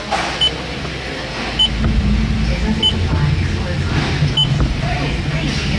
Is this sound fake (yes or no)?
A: no